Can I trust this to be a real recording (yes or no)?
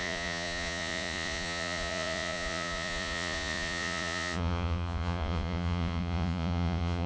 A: no